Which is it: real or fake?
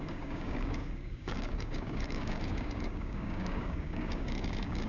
fake